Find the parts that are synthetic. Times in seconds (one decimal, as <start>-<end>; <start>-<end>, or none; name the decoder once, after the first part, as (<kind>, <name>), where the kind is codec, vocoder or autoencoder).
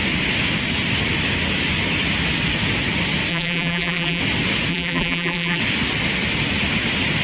3.3-4.2 (vocoder, BigVGAN v2); 4.7-5.6